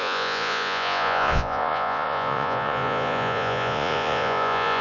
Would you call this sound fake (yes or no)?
yes